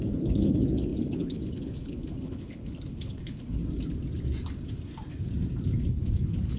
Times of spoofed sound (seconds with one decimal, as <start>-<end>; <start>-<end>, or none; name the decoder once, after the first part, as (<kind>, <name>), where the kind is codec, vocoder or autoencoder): 0.0-3.6 (codec, HILCodec); 5.9-6.6